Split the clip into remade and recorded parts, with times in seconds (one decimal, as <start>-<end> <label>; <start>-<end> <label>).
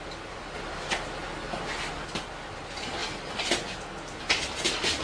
0.0-5.0 recorded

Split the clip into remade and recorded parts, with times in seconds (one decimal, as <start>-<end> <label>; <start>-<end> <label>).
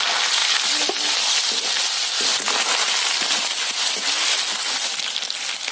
0.0-5.7 recorded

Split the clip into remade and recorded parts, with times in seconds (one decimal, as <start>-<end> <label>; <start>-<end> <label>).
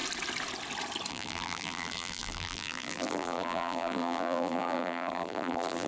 0.0-1.1 recorded; 1.1-5.9 remade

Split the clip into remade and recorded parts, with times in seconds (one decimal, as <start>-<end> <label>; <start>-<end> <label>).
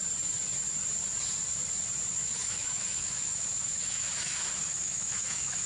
0.0-2.2 recorded; 2.2-5.7 remade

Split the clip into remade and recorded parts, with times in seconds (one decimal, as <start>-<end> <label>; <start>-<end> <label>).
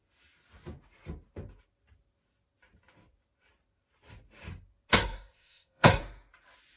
0.0-4.9 recorded; 4.9-6.0 remade; 6.0-6.8 recorded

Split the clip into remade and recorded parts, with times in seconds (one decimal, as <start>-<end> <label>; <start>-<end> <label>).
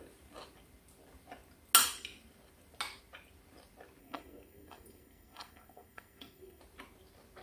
0.0-4.0 recorded; 4.0-6.6 remade; 6.6-7.4 recorded